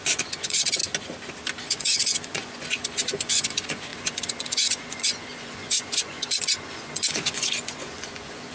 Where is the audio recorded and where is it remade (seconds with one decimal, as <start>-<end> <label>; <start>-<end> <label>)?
0.0-0.8 remade; 0.8-1.6 recorded; 1.6-8.5 remade